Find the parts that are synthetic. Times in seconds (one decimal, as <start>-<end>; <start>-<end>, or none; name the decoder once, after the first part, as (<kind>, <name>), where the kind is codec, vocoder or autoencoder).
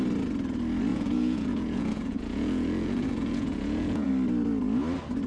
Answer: 0.9-4.1 (vocoder, Vocos)